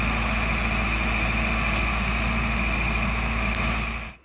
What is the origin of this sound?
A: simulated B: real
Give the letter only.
B